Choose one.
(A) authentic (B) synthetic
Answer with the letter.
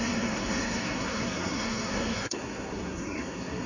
B